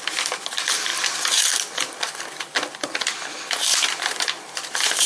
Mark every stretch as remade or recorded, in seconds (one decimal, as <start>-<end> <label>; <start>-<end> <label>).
0.0-3.7 recorded; 3.7-5.1 remade